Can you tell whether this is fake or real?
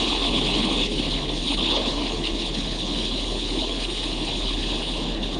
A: fake